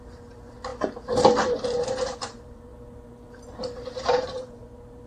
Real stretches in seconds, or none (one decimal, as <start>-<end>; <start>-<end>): 0.7-1.5